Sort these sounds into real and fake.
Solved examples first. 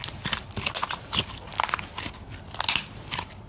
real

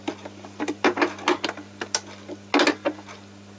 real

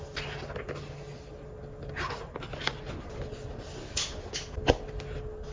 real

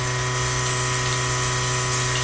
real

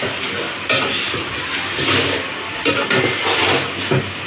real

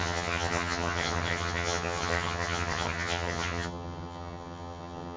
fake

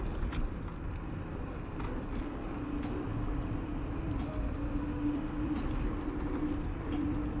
real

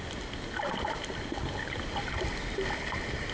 real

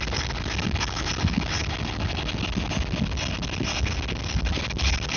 real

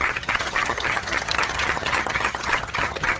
fake